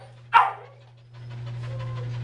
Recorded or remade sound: recorded